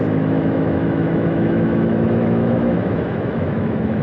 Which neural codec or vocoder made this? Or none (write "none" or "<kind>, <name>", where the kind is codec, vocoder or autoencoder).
autoencoder, DAC-VAE